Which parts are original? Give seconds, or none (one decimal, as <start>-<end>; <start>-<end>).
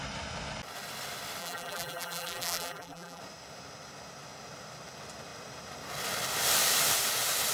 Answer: 0.0-1.4; 3.2-7.5